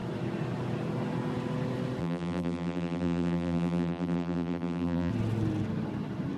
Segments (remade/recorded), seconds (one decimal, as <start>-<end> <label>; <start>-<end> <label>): 0.0-2.0 recorded; 2.0-5.1 remade; 5.1-6.4 recorded